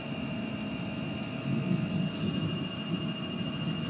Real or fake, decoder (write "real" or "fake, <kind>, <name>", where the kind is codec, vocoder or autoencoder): real